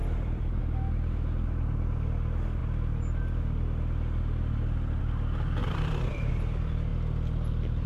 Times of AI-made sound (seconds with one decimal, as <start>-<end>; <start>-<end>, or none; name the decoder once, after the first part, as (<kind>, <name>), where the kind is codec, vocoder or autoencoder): 0.0-0.6 (vocoder, BigVGAN v2); 5.6-6.3